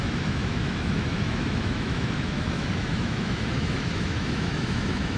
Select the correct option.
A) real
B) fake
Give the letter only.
B